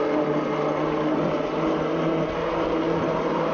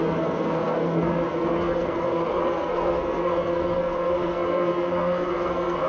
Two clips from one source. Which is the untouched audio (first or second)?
first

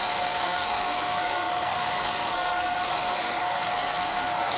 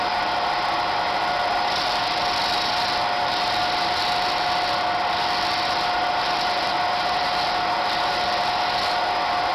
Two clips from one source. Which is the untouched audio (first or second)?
second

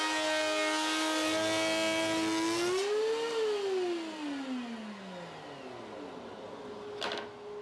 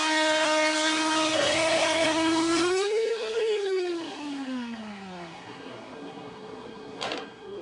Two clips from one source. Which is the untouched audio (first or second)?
first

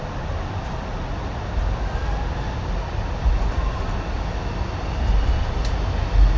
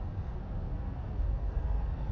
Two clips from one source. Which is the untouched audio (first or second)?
first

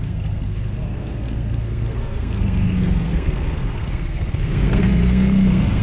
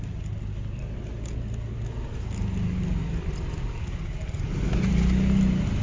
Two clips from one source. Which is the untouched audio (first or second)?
second